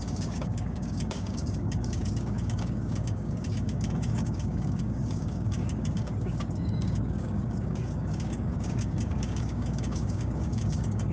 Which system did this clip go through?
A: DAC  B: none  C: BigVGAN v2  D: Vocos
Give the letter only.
A